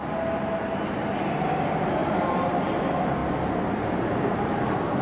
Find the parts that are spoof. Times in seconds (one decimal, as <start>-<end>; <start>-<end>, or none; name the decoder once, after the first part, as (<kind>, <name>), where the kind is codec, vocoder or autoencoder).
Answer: 2.0-2.5 (vocoder, BigVGAN v2)